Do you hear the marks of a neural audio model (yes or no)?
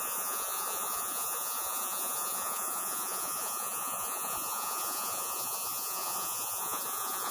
yes